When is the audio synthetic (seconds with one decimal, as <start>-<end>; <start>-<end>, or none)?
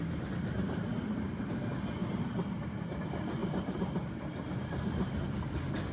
2.0-2.5; 3.4-5.2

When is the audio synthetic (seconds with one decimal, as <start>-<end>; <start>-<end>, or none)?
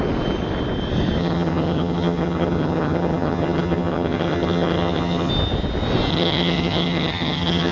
1.2-5.3; 6.1-7.7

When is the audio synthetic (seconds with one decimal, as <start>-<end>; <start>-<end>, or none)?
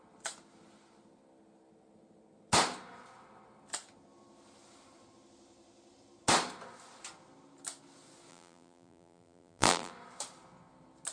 8.3-9.9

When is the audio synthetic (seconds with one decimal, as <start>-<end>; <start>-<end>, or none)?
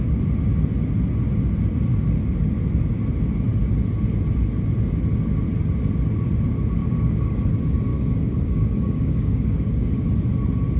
6.8-7.5; 7.9-9.9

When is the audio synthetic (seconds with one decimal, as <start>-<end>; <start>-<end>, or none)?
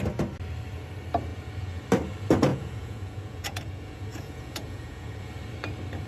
1.3-1.8; 2.5-5.3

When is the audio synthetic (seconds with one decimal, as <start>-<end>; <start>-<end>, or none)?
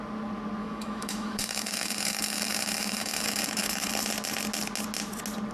0.6-3.9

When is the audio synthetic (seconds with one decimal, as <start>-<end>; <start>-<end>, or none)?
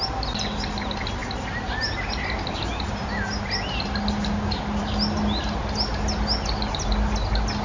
none